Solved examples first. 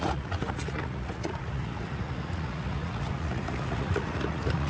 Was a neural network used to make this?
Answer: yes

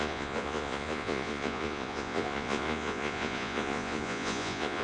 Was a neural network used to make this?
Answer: yes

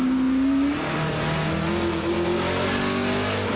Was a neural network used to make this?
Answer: no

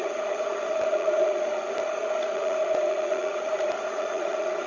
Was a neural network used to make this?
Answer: yes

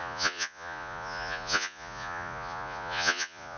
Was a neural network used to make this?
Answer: yes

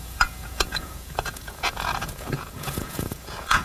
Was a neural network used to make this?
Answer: yes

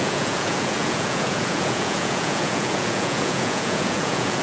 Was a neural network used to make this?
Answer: yes